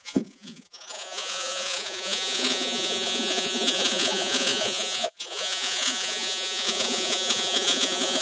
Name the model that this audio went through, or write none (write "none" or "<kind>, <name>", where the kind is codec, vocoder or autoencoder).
vocoder, Vocos